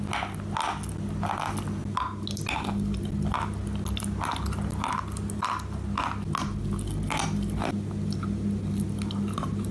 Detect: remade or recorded recorded